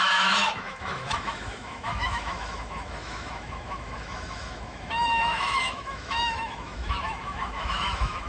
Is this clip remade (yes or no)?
yes